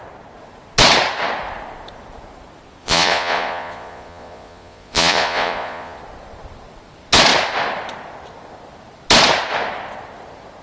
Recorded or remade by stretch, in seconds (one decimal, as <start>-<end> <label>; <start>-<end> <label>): 0.0-2.8 recorded; 2.8-6.0 remade; 6.0-10.6 recorded